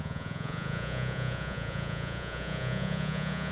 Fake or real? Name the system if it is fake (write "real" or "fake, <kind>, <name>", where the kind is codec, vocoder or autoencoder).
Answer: fake, vocoder, Vocos